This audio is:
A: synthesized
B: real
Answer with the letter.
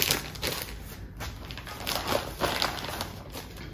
B